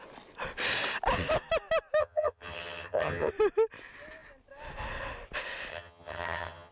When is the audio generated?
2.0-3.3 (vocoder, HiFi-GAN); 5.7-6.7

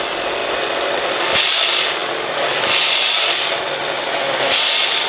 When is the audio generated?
none

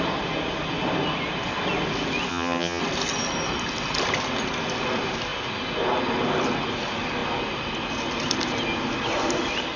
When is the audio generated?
2.3-2.8 (vocoder, HiFi-GAN)